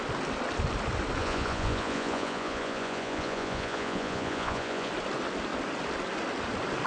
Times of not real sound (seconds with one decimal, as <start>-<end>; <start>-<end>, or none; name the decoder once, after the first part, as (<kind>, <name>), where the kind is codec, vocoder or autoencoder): 1.2-4.9 (vocoder, Vocos)